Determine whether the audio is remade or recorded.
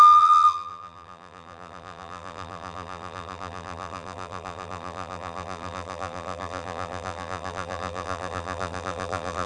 remade